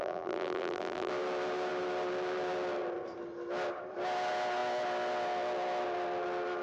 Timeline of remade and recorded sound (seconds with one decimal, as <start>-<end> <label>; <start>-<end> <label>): 0.0-1.1 remade; 1.1-6.6 recorded